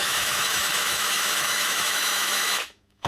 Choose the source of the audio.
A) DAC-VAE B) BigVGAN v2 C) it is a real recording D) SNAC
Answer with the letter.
A